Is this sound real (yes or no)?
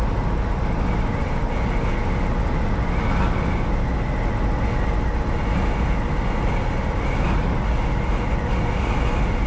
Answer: yes